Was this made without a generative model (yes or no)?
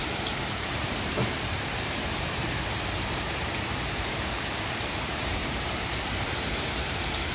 no